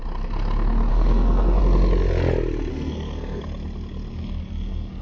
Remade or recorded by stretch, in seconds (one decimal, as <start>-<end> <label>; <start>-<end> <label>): 0.0-0.9 recorded; 0.9-1.6 remade; 1.6-2.7 recorded; 2.7-3.4 remade; 3.4-4.1 recorded; 4.1-5.0 remade

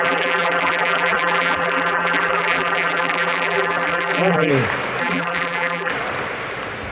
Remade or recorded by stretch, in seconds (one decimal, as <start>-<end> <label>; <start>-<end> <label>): 0.0-4.5 remade; 4.5-5.0 recorded; 5.0-5.9 remade; 5.9-6.9 recorded

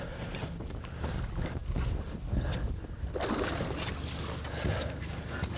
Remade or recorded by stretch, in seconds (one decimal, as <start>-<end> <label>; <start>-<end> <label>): 0.0-5.6 recorded

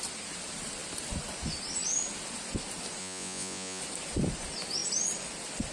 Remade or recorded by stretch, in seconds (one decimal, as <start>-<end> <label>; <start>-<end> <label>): 0.0-3.0 recorded; 3.0-3.8 remade; 3.8-5.7 recorded

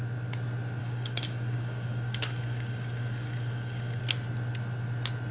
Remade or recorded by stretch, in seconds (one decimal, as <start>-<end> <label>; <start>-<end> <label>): 0.0-0.8 recorded; 0.8-4.0 remade; 4.0-5.3 recorded

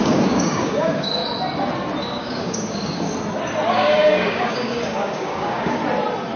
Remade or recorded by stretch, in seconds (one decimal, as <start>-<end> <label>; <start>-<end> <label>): 0.0-1.2 remade; 1.2-2.0 recorded; 2.0-3.1 remade; 3.1-3.7 recorded; 3.7-5.8 remade; 5.8-6.4 recorded

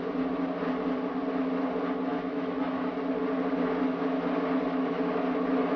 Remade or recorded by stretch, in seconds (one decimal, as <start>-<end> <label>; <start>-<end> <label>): 0.0-2.1 recorded; 2.1-2.9 remade; 2.9-5.8 recorded